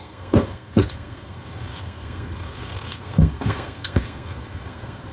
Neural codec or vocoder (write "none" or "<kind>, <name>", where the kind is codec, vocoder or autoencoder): codec, SNAC